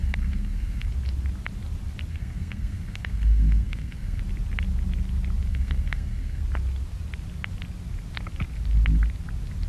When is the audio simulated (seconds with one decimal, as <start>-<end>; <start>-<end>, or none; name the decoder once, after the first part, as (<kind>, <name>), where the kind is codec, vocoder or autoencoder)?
0.0-0.9 (codec, SNAC); 2.1-4.2; 5.5-6.4